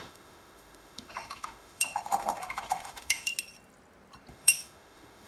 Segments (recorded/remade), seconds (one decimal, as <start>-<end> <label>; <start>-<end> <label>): 0.0-3.3 remade; 3.3-4.3 recorded; 4.3-5.3 remade